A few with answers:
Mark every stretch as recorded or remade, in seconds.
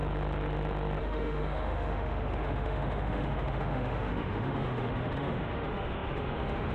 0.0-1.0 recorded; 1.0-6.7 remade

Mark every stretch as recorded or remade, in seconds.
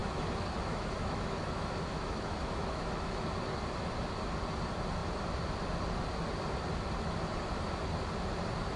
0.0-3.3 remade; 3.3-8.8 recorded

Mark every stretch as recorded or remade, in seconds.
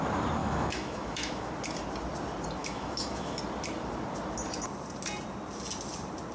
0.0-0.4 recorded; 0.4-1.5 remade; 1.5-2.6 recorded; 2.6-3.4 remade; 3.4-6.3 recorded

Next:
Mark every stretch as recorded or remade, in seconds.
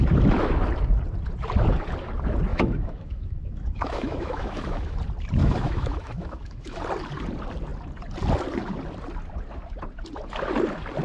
0.0-2.5 recorded; 2.5-5.0 remade; 5.0-5.4 recorded; 5.4-6.8 remade; 6.8-11.0 recorded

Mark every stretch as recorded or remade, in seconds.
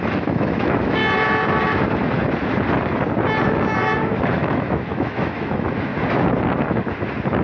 0.0-1.0 remade; 1.0-4.2 recorded; 4.2-5.9 remade; 5.9-7.4 recorded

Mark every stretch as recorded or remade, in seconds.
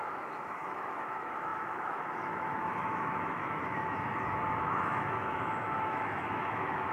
0.0-6.9 remade